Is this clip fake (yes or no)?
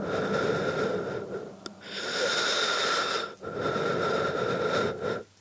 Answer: no